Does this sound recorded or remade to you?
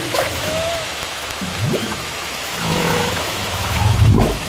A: remade